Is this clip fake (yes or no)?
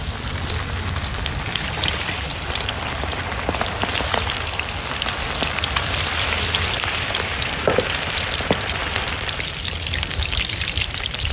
yes